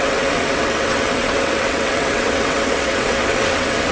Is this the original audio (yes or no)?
no